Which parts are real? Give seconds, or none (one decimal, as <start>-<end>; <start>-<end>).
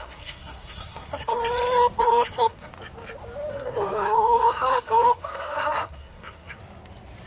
1.4-2.0; 2.7-3.5; 6.6-7.3